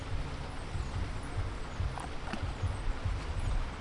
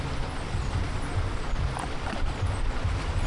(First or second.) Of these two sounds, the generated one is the second